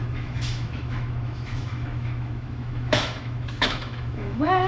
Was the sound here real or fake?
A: fake